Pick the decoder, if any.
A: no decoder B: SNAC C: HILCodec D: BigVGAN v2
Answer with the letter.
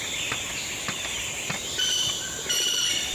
A